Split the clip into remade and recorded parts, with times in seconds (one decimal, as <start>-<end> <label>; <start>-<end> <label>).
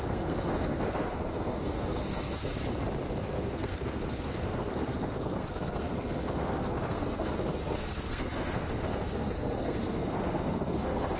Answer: 0.0-2.5 remade; 2.5-3.2 recorded; 3.2-11.2 remade